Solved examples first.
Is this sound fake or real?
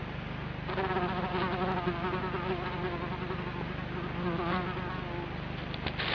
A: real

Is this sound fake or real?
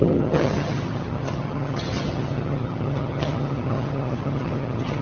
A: fake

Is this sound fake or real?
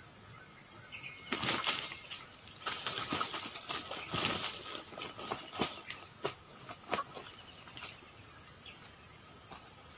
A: real